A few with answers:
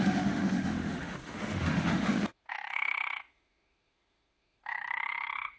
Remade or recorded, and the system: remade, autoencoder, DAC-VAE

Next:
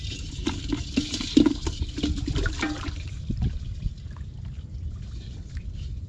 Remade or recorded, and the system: recorded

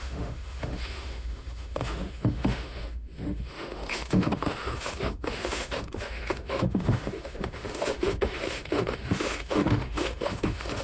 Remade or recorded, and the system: remade, autoencoder, DAC-VAE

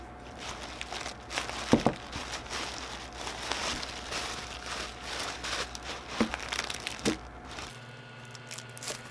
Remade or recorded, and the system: recorded